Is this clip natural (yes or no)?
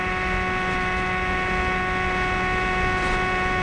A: yes